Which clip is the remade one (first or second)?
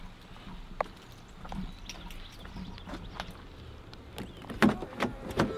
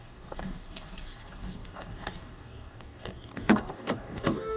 second